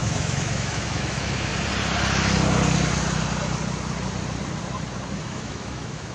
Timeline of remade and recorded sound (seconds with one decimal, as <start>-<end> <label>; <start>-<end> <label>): 0.0-1.5 remade; 1.5-5.2 recorded; 5.2-6.1 remade